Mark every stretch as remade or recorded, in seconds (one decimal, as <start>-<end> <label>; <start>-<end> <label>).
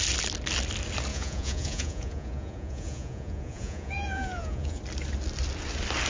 0.0-1.1 recorded; 1.1-4.8 remade; 4.8-6.1 recorded